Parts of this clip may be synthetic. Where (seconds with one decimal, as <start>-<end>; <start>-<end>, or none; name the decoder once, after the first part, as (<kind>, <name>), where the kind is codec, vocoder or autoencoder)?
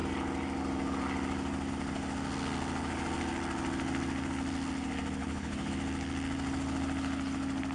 5.2-5.7 (codec, HILCodec)